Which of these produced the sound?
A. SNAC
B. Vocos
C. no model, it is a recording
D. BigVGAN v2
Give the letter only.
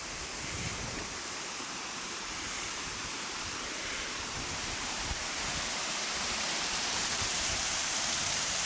D